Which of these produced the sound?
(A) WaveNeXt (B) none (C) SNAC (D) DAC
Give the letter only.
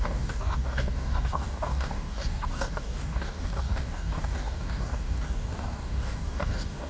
D